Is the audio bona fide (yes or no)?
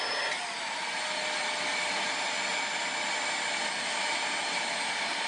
yes